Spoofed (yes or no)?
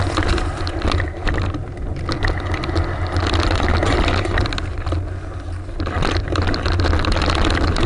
no